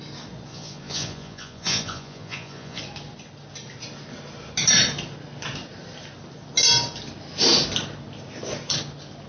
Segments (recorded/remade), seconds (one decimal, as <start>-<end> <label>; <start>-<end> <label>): 0.0-0.5 recorded; 0.5-2.8 remade; 2.8-9.3 recorded